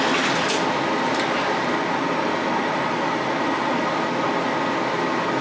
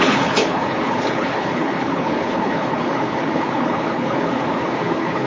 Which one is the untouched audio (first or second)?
first